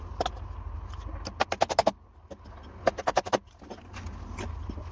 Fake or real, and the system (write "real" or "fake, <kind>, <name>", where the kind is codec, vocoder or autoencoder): real